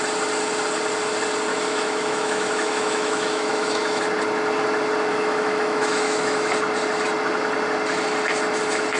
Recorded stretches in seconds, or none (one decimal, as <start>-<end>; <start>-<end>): 0.0-1.5; 4.0-5.1; 6.5-9.0